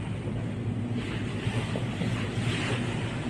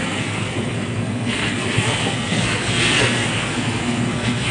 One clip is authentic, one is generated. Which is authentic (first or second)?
first